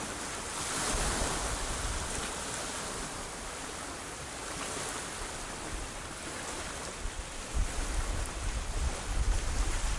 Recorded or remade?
recorded